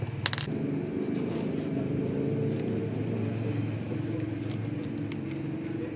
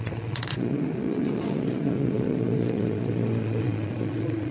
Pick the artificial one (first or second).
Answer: second